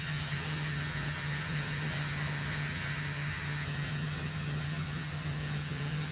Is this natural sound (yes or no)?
no